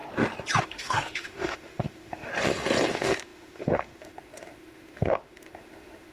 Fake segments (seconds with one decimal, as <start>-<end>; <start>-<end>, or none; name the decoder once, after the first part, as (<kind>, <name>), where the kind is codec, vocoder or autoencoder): 0.6-2.3 (autoencoder, DAC-VAE); 2.9-6.1